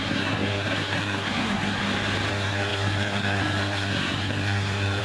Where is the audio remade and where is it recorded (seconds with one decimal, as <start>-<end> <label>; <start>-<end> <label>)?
0.0-1.8 remade; 1.8-2.3 recorded; 2.3-5.0 remade